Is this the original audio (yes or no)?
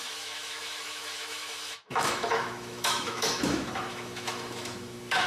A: no